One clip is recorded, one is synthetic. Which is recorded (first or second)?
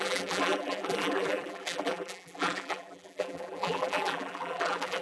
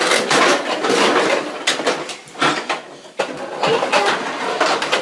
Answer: second